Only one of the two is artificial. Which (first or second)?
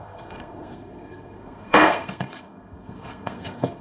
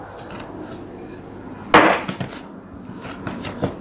first